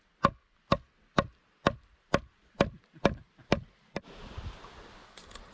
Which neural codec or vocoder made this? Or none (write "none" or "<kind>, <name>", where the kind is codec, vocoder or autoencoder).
none